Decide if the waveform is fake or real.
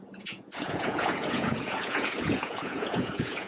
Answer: fake